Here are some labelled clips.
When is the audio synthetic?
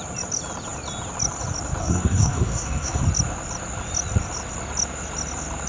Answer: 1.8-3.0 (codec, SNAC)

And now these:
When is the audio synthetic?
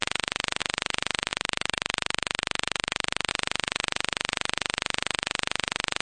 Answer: 1.3-3.3 (vocoder, BigVGAN v2)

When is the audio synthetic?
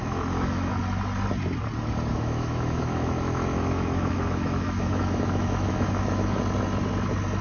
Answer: 0.0-0.7 (autoencoder, DAC-VAE); 2.1-6.4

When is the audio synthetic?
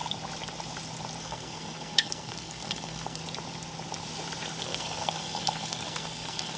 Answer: 1.2-3.2 (codec, SNAC); 4.6-6.6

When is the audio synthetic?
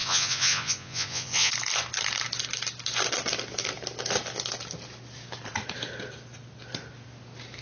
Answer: 0.0-1.5 (vocoder, Vocos)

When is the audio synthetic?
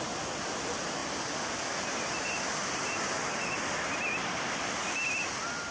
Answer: none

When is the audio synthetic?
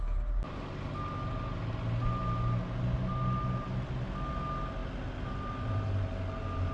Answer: none